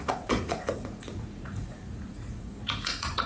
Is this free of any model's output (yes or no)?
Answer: no